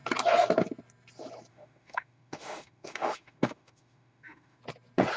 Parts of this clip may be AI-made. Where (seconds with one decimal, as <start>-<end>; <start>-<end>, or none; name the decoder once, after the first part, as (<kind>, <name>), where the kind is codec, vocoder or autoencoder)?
1.5-4.6 (autoencoder, DAC-VAE)